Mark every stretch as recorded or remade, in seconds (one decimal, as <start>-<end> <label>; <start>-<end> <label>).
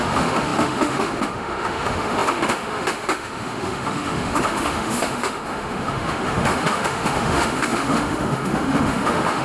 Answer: 0.0-9.4 remade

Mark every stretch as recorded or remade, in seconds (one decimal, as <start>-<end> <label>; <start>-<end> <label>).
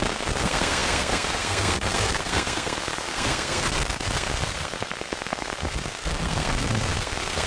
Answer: 0.0-7.5 remade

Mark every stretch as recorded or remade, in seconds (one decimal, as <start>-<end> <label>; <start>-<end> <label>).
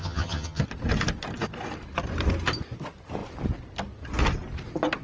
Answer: 0.0-0.6 remade; 0.6-5.0 recorded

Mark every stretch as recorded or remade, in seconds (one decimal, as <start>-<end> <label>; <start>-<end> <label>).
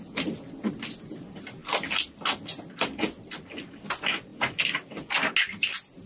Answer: 0.0-6.1 recorded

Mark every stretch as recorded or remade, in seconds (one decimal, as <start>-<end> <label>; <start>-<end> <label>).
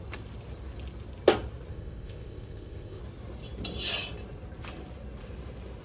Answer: 0.0-1.7 recorded; 1.7-3.0 remade; 3.0-5.8 recorded